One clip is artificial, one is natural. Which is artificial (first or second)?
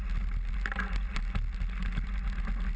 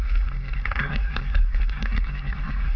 second